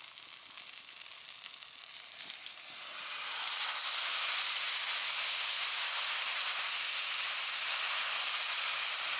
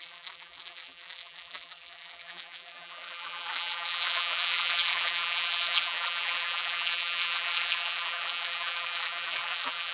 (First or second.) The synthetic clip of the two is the second